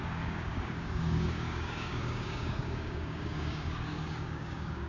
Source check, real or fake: fake